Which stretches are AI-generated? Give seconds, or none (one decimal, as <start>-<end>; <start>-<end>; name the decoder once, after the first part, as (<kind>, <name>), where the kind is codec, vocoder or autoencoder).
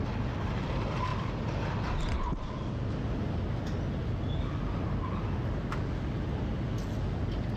none